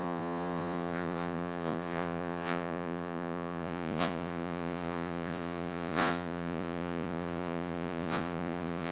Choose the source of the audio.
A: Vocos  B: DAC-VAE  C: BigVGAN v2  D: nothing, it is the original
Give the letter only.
A